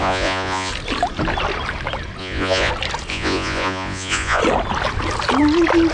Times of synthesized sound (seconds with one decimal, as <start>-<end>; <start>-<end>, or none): 0.0-0.7; 2.2-2.7; 3.1-4.4